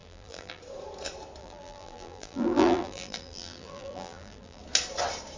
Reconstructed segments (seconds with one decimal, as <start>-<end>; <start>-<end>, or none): 0.0-0.6; 1.4-4.6